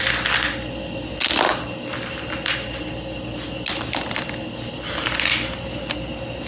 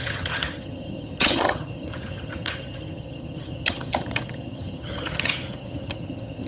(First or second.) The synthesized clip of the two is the second